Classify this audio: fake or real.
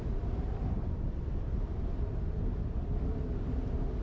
real